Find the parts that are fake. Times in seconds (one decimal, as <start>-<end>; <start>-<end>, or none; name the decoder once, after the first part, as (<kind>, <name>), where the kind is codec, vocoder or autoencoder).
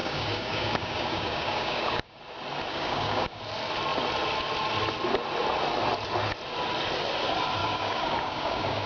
0.0-2.2 (codec, DAC); 2.7-3.4; 7.6-8.9